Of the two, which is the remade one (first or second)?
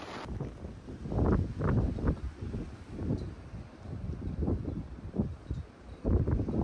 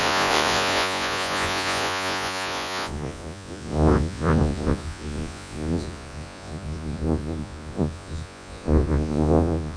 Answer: second